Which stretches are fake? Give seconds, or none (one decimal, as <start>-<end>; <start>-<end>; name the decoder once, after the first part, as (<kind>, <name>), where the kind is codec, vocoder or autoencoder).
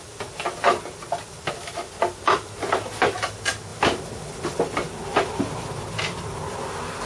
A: none